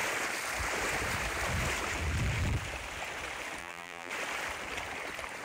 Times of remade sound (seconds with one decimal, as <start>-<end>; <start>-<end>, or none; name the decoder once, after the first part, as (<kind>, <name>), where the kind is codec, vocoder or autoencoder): 3.6-4.1 (vocoder, BigVGAN v2)